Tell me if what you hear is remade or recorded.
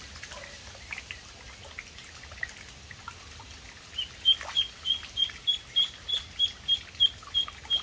recorded